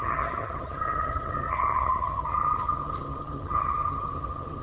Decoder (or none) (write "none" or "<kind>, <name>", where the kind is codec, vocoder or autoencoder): vocoder, HiFi-GAN